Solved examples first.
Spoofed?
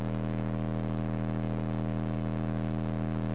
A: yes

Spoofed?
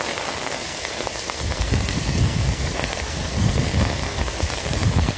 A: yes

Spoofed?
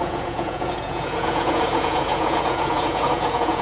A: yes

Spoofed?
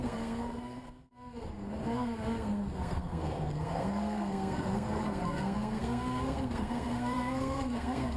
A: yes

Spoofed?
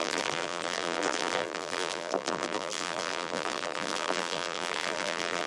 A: yes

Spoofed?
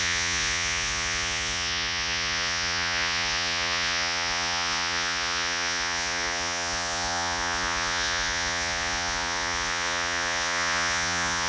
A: yes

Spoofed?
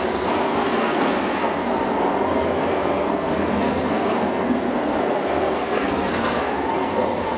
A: yes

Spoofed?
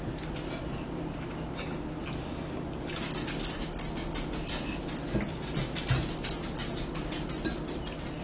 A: no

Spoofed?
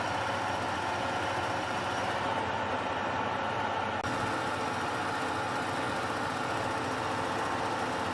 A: no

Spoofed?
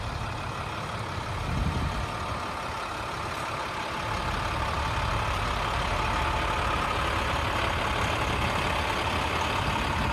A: no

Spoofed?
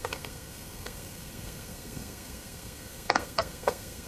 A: yes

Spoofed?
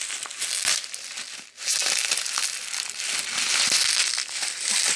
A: no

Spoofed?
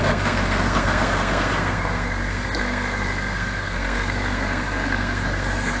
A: yes